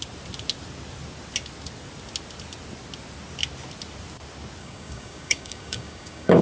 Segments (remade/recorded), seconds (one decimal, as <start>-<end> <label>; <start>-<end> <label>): 0.0-4.6 recorded; 4.6-6.4 remade